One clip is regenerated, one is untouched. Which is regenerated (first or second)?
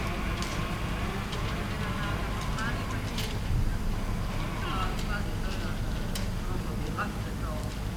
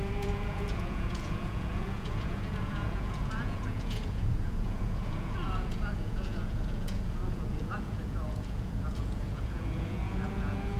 second